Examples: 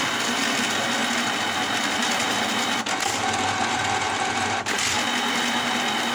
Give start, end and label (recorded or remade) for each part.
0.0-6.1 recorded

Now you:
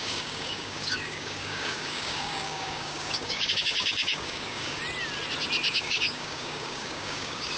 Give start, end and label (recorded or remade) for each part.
0.0-4.8 remade; 4.8-5.7 recorded; 5.7-7.6 remade

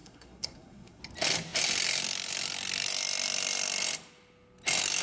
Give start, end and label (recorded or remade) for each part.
0.0-1.0 remade; 1.0-5.0 recorded

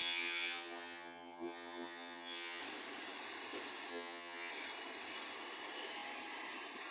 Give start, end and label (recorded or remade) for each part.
0.0-2.6 remade; 2.6-3.9 recorded; 3.9-4.5 remade; 4.5-6.9 recorded

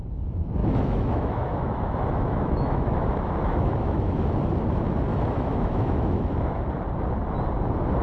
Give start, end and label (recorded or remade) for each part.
0.0-0.6 recorded; 0.6-4.3 remade; 4.3-5.1 recorded; 5.1-6.6 remade; 6.6-8.0 recorded

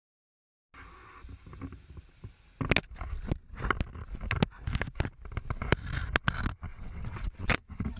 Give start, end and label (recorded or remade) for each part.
0.0-6.7 recorded; 6.7-8.0 remade

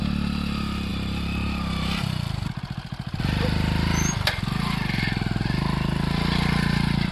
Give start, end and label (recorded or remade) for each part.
0.0-7.1 recorded

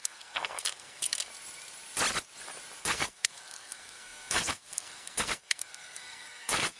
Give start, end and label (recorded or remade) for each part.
0.0-1.3 remade; 1.3-2.8 recorded; 2.8-6.8 remade